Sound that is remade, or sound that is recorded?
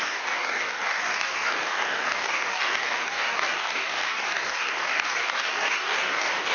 remade